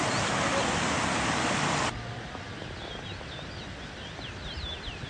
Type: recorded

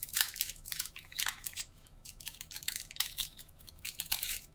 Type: remade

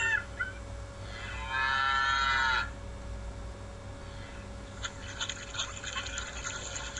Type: recorded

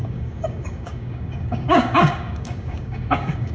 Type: remade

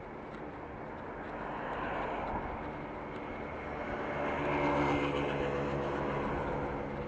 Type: recorded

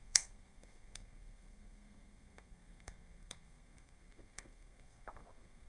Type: remade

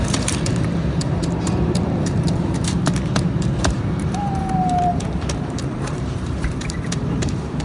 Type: remade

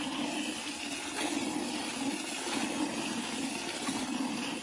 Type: recorded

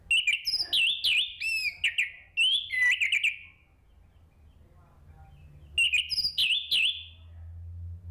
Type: recorded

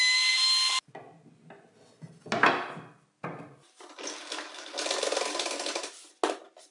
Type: recorded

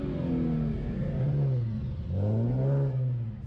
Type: recorded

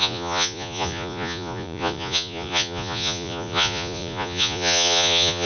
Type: remade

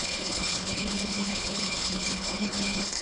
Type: remade